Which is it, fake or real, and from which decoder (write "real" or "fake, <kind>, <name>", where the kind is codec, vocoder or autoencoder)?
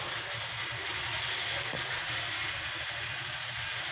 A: real